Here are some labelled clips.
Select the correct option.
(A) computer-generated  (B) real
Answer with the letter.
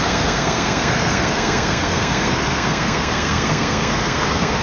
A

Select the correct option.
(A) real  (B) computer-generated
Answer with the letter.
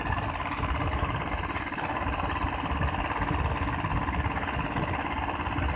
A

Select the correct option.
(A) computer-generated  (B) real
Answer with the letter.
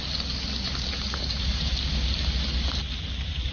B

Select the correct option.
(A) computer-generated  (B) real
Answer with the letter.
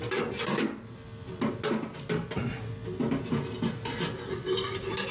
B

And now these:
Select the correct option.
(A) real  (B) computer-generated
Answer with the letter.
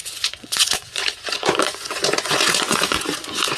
B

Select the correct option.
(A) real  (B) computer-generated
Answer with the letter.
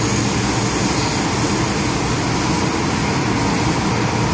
A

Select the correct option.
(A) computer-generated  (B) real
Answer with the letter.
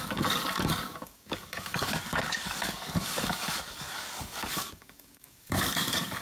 A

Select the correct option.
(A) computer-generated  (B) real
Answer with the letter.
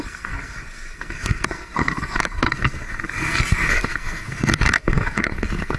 A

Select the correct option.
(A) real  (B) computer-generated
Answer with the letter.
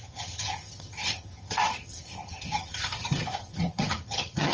B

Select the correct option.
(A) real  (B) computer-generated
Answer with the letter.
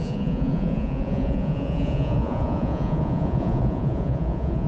B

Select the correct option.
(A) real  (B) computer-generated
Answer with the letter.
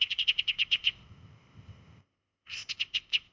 B